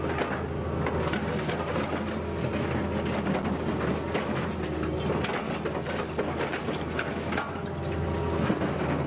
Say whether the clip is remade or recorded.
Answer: recorded